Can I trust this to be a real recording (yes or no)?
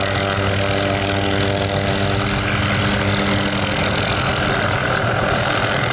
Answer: yes